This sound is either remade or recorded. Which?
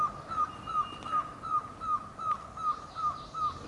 recorded